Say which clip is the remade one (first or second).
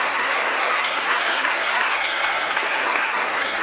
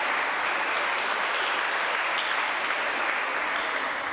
first